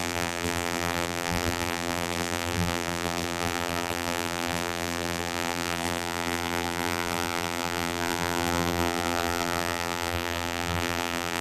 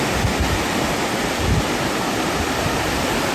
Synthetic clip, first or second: first